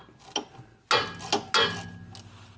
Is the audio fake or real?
real